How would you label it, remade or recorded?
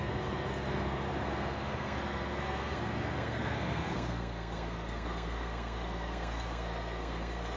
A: remade